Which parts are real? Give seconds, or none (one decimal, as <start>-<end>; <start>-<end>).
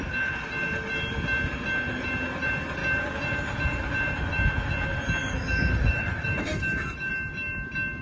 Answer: 0.0-5.2; 7.1-8.0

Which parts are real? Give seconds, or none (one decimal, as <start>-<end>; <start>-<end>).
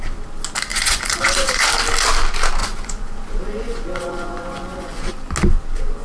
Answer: 0.0-0.7; 1.7-2.6; 5.1-6.0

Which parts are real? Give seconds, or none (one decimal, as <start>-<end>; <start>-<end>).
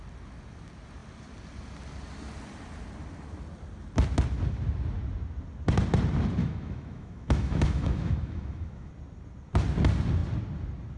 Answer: 0.0-6.4; 8.9-11.0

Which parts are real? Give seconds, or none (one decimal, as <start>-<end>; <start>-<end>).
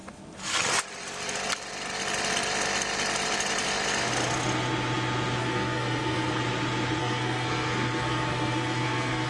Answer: 0.0-5.4; 6.4-7.0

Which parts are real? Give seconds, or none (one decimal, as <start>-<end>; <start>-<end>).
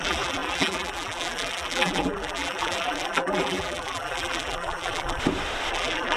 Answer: 5.2-5.7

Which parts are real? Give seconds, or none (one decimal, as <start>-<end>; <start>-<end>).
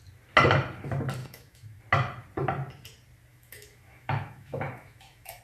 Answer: 0.0-1.2; 1.8-3.3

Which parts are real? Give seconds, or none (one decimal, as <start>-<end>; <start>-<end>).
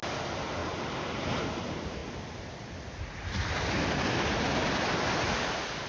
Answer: 0.0-5.9